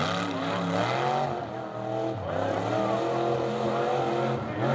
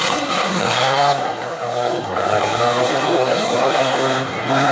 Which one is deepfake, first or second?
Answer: second